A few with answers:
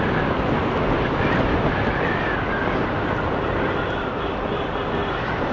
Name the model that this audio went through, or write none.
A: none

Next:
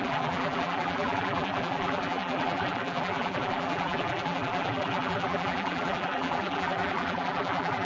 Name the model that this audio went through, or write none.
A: vocoder, BigVGAN v2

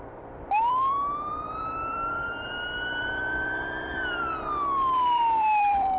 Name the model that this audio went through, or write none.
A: vocoder, BigVGAN v2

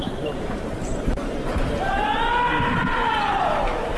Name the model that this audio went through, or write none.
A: vocoder, BigVGAN v2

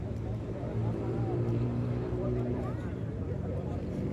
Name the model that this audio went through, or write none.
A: vocoder, BigVGAN v2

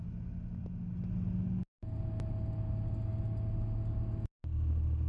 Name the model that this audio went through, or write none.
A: none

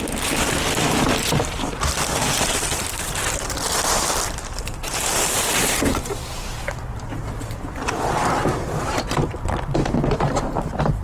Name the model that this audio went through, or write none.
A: vocoder, BigVGAN v2